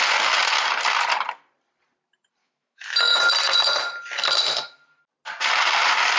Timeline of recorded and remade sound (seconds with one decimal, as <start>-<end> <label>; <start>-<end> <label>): 0.0-2.4 recorded; 2.4-3.2 remade; 3.2-6.2 recorded